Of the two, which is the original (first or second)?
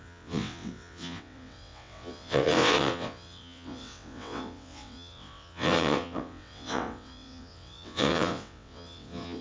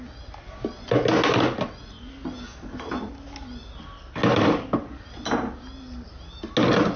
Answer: second